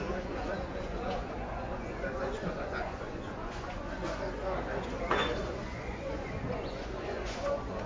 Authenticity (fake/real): fake